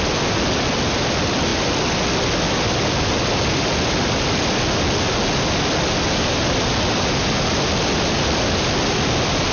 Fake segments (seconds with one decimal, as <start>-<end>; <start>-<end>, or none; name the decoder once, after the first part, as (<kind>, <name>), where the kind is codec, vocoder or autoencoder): none